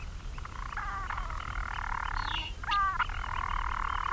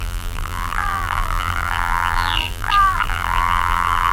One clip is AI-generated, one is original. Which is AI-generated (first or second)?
second